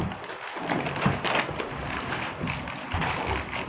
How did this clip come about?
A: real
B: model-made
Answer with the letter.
A